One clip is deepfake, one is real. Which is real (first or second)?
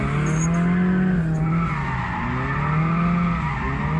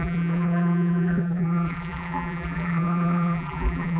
first